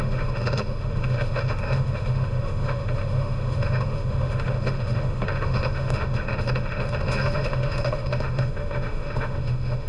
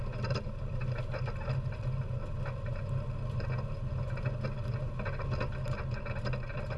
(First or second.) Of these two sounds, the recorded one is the second